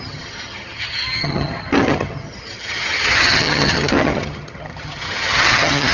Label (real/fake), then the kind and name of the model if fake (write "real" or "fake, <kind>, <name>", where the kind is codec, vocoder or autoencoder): fake, vocoder, HiFi-GAN